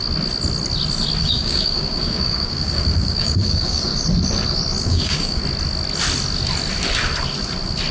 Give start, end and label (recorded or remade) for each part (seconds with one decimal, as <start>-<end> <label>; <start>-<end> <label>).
0.0-1.2 recorded; 1.2-3.9 remade; 3.9-4.8 recorded; 4.8-5.4 remade; 5.4-7.9 recorded